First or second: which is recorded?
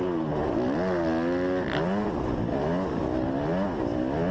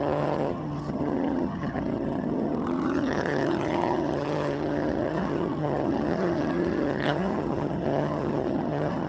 first